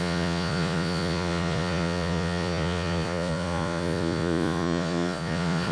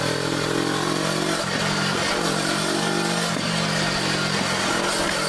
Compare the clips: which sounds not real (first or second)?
first